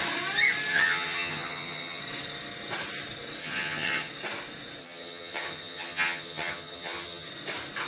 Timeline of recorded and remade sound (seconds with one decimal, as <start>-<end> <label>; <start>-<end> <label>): 0.0-0.7 recorded; 0.7-2.0 remade; 2.0-3.4 recorded; 3.4-4.1 remade; 4.1-4.8 recorded; 4.8-7.3 remade; 7.3-7.9 recorded

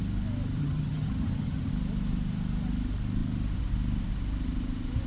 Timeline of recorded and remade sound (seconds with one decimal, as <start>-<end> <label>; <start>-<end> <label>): 0.0-0.6 recorded; 0.6-1.7 remade; 1.7-5.1 recorded

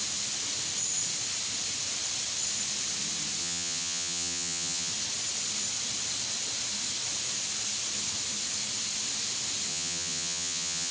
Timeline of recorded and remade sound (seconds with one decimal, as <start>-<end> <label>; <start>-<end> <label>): 0.0-3.4 recorded; 3.4-4.9 remade; 4.9-9.7 recorded; 9.7-10.9 remade

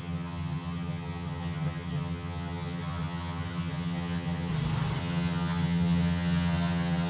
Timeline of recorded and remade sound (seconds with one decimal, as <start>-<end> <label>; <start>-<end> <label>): 0.0-4.5 remade; 4.5-5.0 recorded; 5.0-7.1 remade